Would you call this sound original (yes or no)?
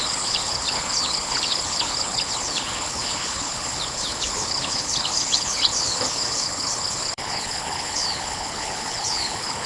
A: no